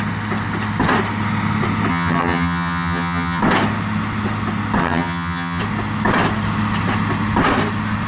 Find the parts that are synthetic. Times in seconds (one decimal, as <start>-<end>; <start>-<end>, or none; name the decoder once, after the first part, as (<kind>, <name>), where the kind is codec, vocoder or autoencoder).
1.9-3.4 (vocoder, HiFi-GAN); 4.8-5.6